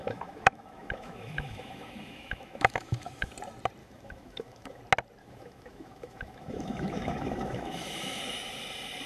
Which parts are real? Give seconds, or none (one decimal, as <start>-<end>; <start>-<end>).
3.3-3.8; 4.8-5.2; 8.2-9.1